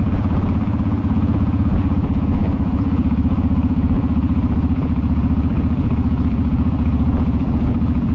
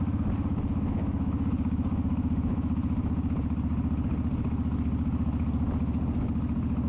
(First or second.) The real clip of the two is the second